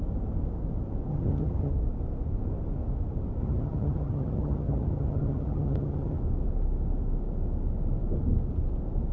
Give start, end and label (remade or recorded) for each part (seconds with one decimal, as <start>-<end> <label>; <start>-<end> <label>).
0.0-1.1 recorded; 1.1-1.7 remade; 1.7-3.4 recorded; 3.4-6.2 remade; 6.2-9.1 recorded